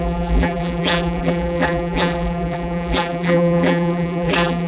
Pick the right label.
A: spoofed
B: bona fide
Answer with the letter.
A